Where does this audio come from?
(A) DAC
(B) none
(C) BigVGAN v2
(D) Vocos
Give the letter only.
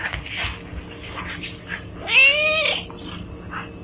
B